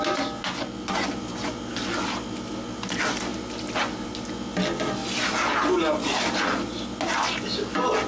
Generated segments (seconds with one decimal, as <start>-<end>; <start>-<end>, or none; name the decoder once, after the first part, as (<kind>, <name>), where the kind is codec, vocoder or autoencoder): 5.0-6.4 (vocoder, BigVGAN v2)